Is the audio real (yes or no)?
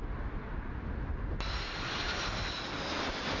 yes